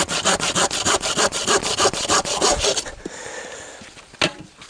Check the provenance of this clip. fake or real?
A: real